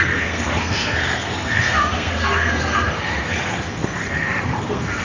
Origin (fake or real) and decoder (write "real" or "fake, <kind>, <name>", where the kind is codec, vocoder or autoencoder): fake, codec, SNAC